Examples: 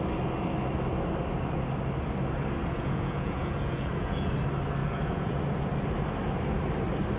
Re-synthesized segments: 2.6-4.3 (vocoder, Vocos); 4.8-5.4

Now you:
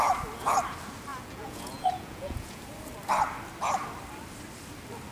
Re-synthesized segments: 1.1-2.6 (vocoder, Vocos)

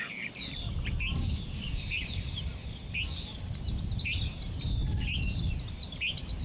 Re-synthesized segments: none